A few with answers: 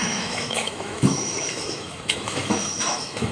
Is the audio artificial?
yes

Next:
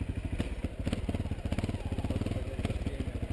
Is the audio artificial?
no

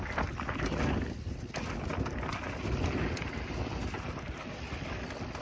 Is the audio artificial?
no